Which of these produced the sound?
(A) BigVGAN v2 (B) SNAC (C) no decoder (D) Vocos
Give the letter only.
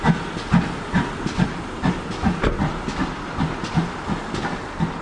C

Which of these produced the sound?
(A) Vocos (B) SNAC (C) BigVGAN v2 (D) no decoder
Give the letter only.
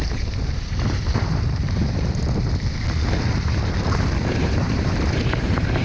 C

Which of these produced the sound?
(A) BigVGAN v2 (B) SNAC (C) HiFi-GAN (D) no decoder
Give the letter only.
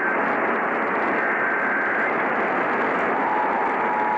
D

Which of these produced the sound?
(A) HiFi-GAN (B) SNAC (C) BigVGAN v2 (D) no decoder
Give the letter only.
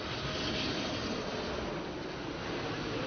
D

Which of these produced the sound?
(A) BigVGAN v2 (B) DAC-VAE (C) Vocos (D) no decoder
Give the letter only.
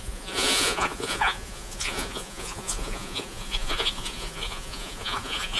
C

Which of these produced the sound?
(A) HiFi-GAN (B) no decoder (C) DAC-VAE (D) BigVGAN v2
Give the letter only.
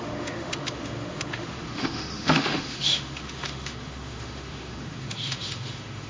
C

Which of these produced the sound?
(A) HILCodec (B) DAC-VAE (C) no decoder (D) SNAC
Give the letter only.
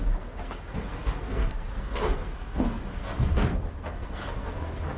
D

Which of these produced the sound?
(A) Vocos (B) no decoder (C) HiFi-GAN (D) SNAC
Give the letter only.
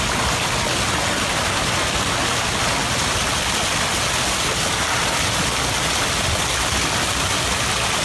B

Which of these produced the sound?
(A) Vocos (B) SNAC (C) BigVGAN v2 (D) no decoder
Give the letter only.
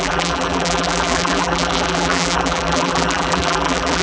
C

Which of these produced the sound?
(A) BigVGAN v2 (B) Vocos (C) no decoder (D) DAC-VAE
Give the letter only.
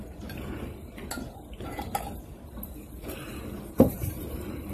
C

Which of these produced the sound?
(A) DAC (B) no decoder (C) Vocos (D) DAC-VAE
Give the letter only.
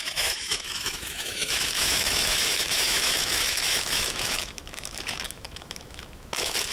D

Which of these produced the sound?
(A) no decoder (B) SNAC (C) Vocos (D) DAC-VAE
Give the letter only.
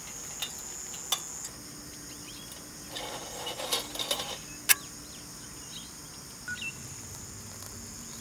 A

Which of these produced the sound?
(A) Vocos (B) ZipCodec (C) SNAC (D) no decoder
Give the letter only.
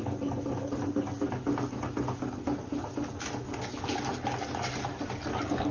D